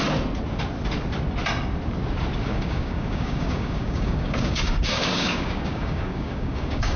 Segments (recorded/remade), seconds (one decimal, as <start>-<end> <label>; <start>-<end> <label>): 0.0-2.5 recorded; 2.5-7.0 remade